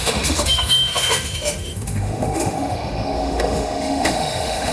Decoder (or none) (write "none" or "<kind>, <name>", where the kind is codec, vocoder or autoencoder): autoencoder, DAC-VAE